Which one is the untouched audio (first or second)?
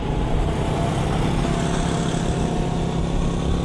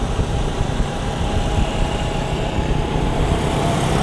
first